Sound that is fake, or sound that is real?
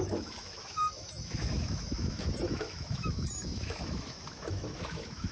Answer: fake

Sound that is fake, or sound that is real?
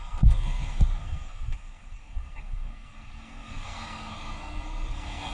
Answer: fake